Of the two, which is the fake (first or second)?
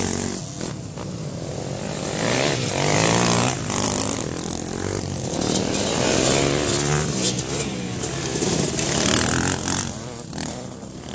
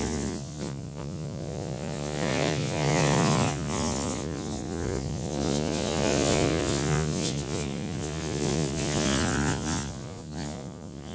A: second